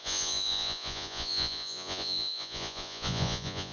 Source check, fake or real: fake